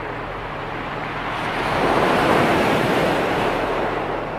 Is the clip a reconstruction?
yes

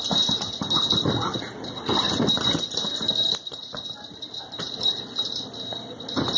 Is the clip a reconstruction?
no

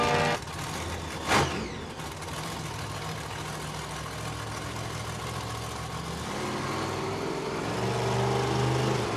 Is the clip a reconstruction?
no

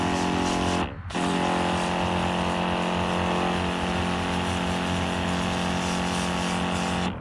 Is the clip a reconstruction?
no